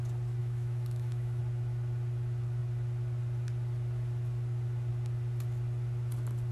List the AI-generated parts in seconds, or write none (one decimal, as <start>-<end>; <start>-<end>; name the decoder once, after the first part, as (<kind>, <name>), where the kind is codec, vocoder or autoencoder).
0.4-1.4 (autoencoder, DAC-VAE)